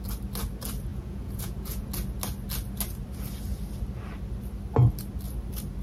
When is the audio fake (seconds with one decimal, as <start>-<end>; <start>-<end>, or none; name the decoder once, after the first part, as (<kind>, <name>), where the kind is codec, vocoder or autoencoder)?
0.9-1.9 (vocoder, Vocos)